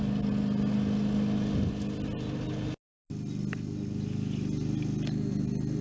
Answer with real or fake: real